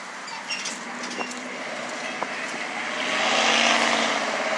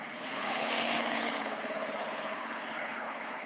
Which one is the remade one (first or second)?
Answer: second